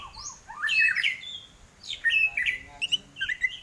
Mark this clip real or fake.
real